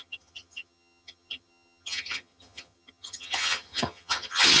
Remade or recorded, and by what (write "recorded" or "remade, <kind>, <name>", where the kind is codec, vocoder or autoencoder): remade, vocoder, HiFi-GAN